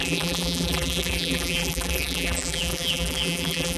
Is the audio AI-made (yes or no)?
yes